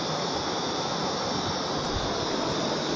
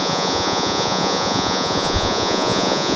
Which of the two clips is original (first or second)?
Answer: first